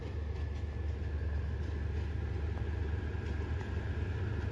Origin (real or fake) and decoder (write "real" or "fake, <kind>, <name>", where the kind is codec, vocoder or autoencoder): real